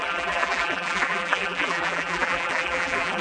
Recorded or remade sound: remade